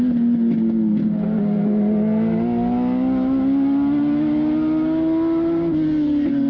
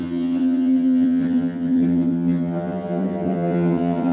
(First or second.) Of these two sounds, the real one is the first